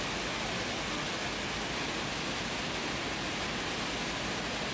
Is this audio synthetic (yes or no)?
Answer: no